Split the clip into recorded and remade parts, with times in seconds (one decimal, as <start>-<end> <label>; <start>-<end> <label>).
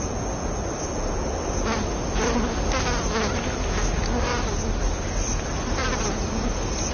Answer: 0.0-6.9 recorded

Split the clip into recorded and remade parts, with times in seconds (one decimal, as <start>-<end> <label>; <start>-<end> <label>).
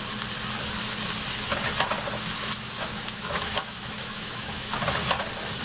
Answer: 0.0-2.4 recorded; 2.4-4.7 remade; 4.7-5.6 recorded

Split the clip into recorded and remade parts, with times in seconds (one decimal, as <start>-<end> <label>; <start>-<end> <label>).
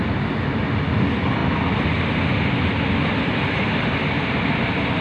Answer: 0.0-5.0 recorded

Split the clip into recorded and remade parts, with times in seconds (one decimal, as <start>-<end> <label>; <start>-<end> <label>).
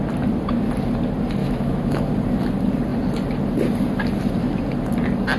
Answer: 0.0-1.4 recorded; 1.4-2.1 remade; 2.1-5.4 recorded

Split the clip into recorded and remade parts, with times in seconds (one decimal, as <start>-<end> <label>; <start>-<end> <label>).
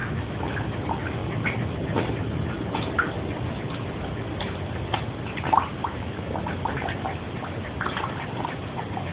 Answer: 0.0-0.5 remade; 0.5-5.8 recorded; 5.8-6.4 remade; 6.4-9.1 recorded